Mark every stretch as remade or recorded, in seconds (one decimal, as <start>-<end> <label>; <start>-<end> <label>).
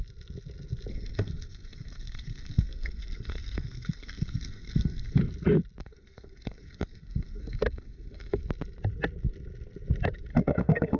0.0-0.9 recorded; 0.9-5.2 remade; 5.2-5.8 recorded; 5.8-8.4 remade; 8.4-10.3 recorded; 10.3-11.0 remade